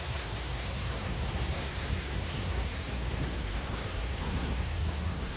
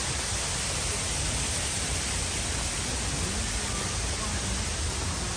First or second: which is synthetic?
first